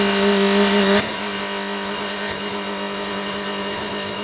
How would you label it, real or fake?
fake